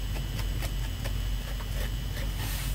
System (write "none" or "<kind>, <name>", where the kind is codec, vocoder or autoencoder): none